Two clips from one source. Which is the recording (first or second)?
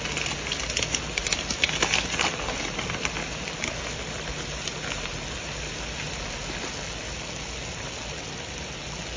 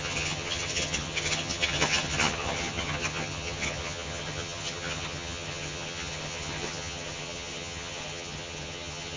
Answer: first